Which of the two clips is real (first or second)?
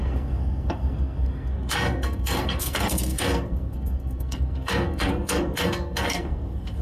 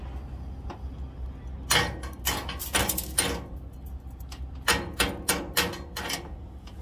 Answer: second